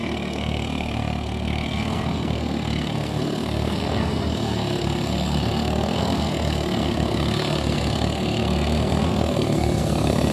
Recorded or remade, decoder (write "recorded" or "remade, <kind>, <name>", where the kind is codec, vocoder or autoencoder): remade, codec, SNAC